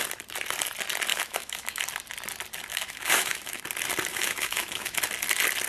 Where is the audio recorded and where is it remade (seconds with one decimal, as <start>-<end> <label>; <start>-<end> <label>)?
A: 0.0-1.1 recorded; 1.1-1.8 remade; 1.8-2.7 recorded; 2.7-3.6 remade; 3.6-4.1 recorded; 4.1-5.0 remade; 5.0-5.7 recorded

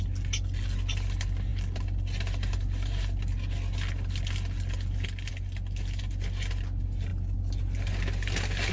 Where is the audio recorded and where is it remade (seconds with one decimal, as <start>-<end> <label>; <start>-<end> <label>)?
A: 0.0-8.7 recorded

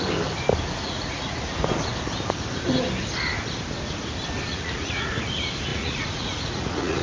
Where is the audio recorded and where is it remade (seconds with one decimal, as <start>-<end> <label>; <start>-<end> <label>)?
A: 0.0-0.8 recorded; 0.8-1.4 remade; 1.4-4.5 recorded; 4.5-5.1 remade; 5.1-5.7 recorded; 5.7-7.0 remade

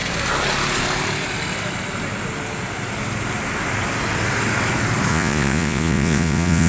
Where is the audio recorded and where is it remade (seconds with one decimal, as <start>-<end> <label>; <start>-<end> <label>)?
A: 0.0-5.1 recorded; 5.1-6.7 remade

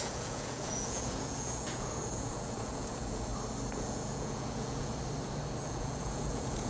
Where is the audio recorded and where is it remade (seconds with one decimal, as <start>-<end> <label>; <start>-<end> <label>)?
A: 0.0-3.3 remade; 3.3-3.8 recorded; 3.8-4.9 remade; 4.9-5.6 recorded; 5.6-6.7 remade

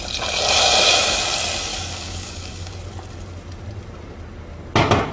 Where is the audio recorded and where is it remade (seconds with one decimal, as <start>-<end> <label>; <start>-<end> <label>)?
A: 0.0-1.7 recorded; 1.7-2.7 remade; 2.7-5.1 recorded